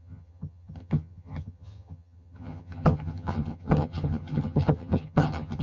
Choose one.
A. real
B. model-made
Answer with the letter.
B